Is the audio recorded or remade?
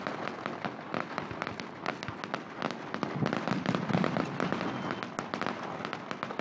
recorded